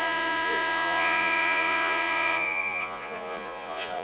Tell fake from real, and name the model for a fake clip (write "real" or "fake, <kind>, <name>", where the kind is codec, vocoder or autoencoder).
fake, vocoder, Vocos